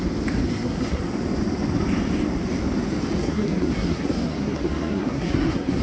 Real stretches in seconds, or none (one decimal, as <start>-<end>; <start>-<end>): 0.0-0.5; 1.0-3.2